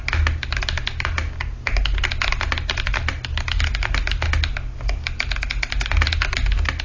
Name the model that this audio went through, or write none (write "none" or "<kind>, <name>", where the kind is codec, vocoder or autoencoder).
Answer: none